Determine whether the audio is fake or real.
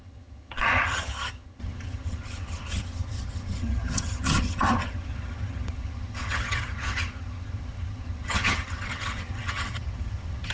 fake